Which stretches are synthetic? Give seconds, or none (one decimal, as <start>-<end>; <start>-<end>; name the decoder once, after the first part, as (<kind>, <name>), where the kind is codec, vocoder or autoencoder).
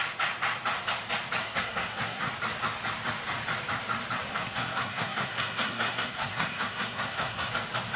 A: 1.4-2.3 (codec, SNAC); 4.3-7.5